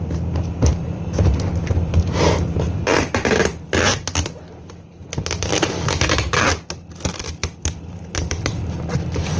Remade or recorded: remade